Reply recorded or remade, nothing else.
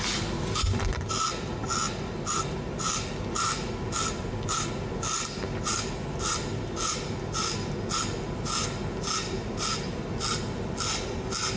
recorded